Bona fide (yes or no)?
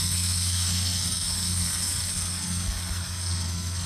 no